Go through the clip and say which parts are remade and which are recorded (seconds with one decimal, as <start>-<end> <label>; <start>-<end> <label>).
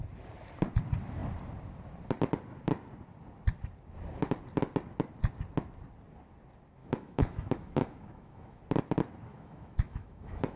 0.0-6.8 recorded; 6.8-8.6 remade; 8.6-9.3 recorded; 9.3-10.6 remade